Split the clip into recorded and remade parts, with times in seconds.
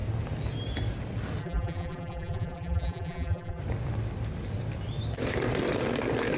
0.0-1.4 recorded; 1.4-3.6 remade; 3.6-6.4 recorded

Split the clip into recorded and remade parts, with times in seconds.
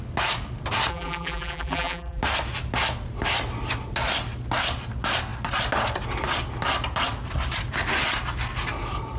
0.0-0.9 recorded; 0.9-2.2 remade; 2.2-9.2 recorded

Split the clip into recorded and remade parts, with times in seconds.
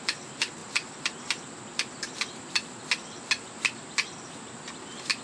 0.0-5.2 recorded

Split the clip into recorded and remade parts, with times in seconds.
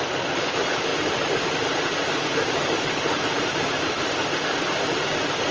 0.0-5.5 recorded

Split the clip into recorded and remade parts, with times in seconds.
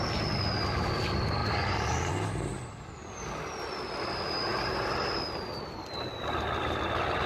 0.0-7.3 recorded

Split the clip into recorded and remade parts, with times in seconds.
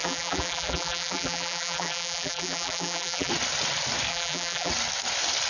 0.0-3.3 remade; 3.3-4.1 recorded; 4.1-4.7 remade; 4.7-5.5 recorded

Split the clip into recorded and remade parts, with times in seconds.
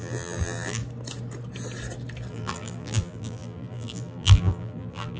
0.0-0.8 remade; 0.8-2.3 recorded; 2.3-5.2 remade